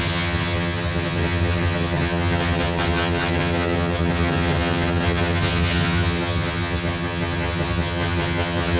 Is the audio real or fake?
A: fake